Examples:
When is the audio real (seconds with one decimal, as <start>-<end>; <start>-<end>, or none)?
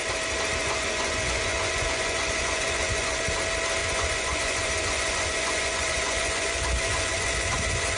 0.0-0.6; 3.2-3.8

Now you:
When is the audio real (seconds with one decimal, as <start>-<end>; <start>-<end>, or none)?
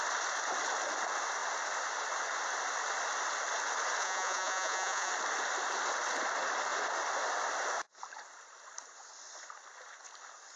0.0-4.0; 5.1-10.6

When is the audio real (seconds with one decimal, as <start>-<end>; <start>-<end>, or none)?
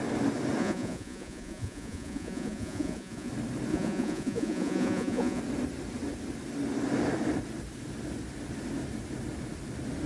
0.0-0.6; 3.3-3.7; 5.4-10.1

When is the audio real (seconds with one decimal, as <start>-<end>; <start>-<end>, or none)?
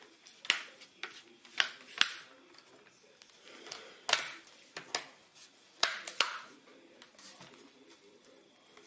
0.0-5.3; 6.6-8.9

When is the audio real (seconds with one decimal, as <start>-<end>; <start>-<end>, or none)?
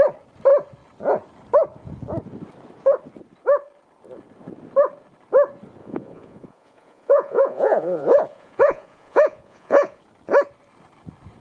0.0-5.8; 10.0-11.4